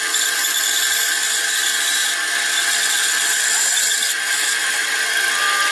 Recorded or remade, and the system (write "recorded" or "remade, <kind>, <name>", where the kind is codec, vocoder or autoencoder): recorded